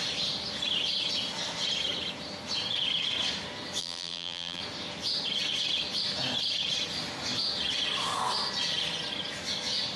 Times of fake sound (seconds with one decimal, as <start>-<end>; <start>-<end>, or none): 3.8-4.6